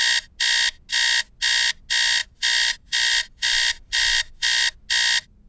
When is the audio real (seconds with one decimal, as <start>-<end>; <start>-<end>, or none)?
0.0-2.2; 4.6-5.5